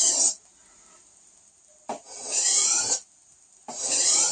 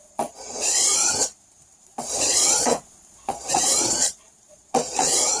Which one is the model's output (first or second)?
second